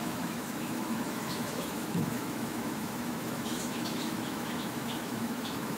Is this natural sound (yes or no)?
no